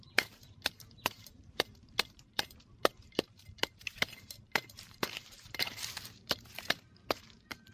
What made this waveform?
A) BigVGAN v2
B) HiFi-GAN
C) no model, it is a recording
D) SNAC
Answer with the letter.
A